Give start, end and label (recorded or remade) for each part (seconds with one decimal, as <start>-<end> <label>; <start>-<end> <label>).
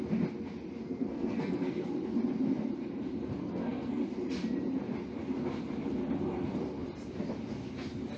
0.0-0.8 recorded; 0.8-1.9 remade; 1.9-3.4 recorded; 3.4-4.0 remade; 4.0-8.2 recorded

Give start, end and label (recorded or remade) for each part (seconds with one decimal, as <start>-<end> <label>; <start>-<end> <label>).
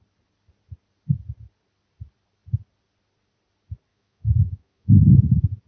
0.0-3.9 recorded; 3.9-5.0 remade; 5.0-5.7 recorded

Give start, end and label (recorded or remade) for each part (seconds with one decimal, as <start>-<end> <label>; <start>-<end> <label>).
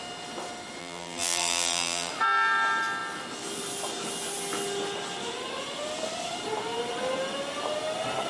0.0-0.8 recorded; 0.8-2.1 remade; 2.1-8.3 recorded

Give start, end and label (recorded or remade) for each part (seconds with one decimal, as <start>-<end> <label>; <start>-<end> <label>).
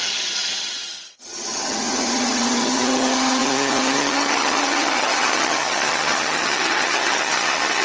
0.0-7.8 remade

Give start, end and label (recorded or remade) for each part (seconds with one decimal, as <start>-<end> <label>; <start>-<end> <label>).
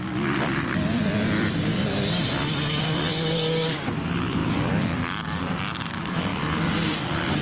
0.0-1.7 remade; 1.7-2.2 recorded; 2.2-6.3 remade; 6.3-6.9 recorded; 6.9-7.4 remade